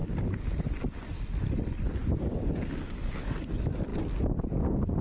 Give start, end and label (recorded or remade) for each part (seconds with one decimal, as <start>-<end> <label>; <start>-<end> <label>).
0.0-5.0 recorded